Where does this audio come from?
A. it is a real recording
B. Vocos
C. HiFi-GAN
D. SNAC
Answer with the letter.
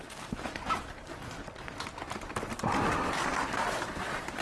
A